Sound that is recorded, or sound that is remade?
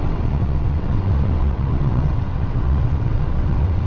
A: remade